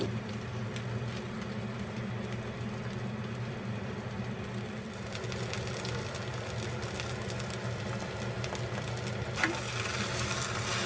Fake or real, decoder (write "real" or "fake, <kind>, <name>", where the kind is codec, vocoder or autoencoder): real